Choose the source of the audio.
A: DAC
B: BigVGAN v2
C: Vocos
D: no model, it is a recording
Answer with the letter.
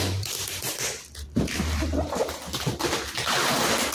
B